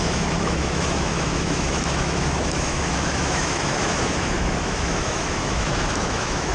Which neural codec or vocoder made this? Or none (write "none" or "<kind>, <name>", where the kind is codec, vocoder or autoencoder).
autoencoder, DAC-VAE